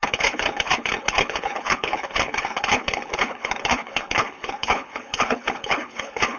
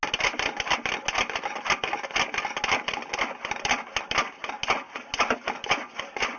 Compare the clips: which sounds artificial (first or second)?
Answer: first